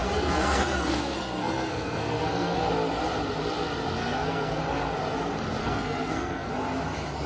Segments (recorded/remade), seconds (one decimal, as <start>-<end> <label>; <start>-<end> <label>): 0.0-2.6 remade; 2.6-4.0 recorded; 4.0-4.6 remade; 4.6-5.6 recorded; 5.6-6.5 remade; 6.5-7.3 recorded